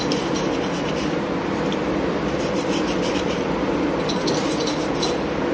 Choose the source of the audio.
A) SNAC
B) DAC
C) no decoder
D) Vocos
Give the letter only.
C